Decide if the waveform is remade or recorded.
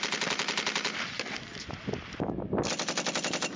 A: recorded